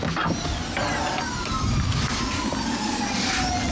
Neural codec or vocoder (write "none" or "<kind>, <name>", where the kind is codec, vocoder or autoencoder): none